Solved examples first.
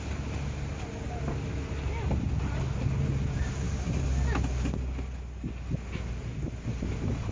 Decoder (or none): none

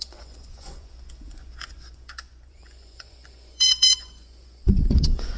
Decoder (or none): vocoder, Vocos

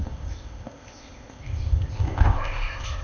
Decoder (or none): codec, ZipCodec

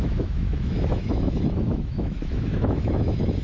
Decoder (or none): autoencoder, DAC-VAE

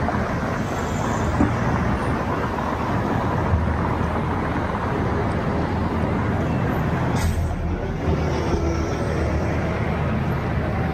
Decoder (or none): none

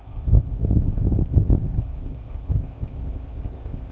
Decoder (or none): codec, ZipCodec